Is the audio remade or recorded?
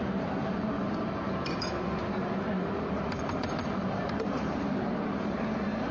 remade